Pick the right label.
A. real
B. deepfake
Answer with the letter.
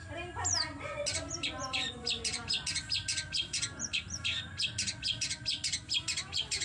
A